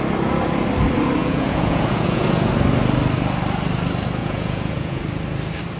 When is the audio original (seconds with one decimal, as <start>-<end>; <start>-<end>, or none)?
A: 0.0-1.2; 2.5-4.2; 5.0-5.8